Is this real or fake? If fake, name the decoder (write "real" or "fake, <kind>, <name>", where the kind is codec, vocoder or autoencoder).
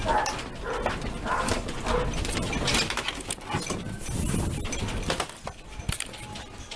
real